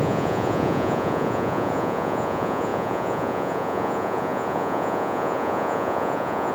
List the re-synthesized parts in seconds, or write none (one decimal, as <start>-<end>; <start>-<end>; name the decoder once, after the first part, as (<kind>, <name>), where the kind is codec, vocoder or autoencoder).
0.0-6.5 (vocoder, Vocos)

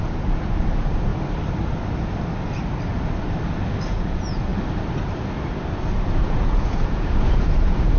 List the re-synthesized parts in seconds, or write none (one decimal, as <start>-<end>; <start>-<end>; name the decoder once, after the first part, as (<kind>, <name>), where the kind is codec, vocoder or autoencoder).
0.0-1.1 (vocoder, Vocos); 3.9-4.5; 5.9-8.0

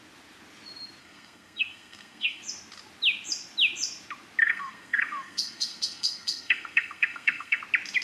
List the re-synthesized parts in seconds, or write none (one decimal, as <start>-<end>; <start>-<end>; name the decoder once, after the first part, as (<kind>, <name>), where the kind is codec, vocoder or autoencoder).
1.0-2.4 (codec, SNAC); 4.4-7.6